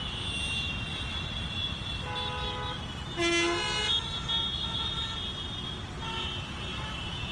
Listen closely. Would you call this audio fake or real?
real